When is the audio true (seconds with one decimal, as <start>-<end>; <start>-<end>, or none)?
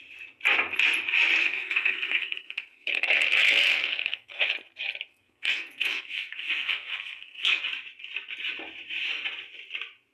0.0-1.4; 4.5-5.1; 7.6-10.1